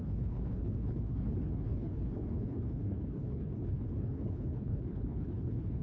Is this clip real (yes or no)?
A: no